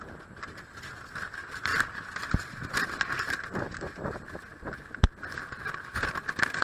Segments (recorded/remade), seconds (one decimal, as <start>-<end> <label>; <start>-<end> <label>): 0.0-6.6 recorded